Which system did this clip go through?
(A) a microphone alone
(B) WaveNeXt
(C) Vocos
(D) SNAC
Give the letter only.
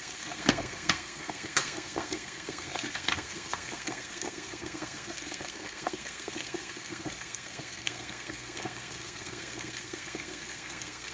D